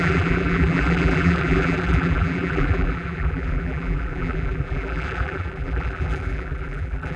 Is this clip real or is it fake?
fake